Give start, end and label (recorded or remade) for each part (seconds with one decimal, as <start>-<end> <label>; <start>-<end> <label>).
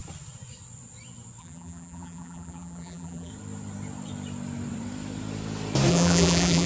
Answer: 0.0-1.4 recorded; 1.4-3.3 remade; 3.3-5.9 recorded; 5.9-6.7 remade